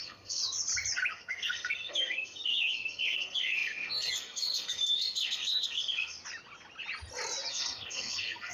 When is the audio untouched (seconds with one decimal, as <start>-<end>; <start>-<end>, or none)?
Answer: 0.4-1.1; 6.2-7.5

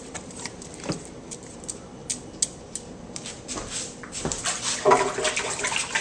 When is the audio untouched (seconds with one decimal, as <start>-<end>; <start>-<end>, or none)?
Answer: 2.0-5.6

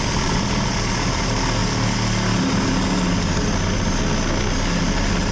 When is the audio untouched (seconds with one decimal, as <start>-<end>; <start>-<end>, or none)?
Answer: 0.0-5.3